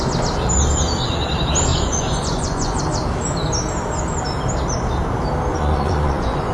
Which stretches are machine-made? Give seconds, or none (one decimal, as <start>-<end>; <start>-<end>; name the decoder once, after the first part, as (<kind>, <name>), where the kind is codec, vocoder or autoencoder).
1.7-2.8 (vocoder, Vocos); 5.5-6.5